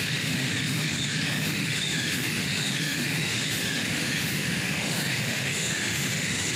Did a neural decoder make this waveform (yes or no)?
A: yes